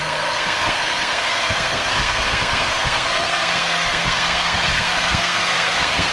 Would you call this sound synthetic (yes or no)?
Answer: yes